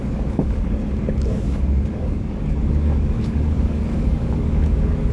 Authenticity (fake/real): fake